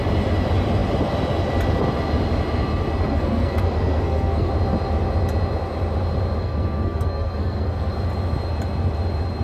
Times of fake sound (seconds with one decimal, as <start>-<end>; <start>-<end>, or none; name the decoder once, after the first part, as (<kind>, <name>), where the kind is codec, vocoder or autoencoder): 3.1-4.5 (codec, SNAC); 6.4-7.9